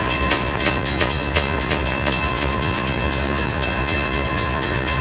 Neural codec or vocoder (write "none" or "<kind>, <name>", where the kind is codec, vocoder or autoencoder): vocoder, Vocos